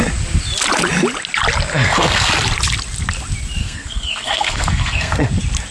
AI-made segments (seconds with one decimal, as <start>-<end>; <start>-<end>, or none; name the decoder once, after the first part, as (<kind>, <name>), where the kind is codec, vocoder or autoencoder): 1.7-2.3 (codec, SNAC); 3.6-5.3